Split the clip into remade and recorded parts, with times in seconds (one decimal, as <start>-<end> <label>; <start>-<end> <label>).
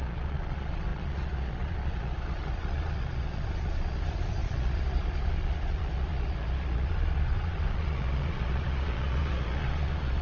0.0-10.2 remade